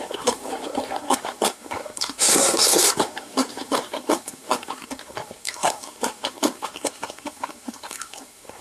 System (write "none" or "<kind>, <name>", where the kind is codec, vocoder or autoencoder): codec, SNAC